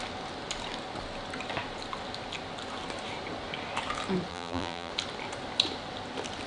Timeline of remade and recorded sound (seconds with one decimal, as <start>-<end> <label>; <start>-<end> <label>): 0.0-4.3 recorded; 4.3-4.9 remade; 4.9-6.5 recorded